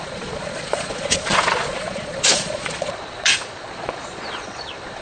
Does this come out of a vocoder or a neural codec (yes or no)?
yes